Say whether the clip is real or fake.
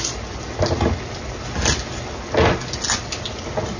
real